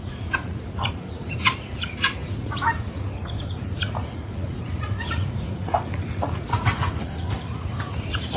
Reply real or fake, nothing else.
fake